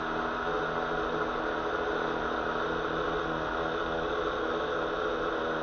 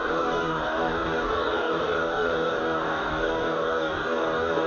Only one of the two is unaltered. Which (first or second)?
first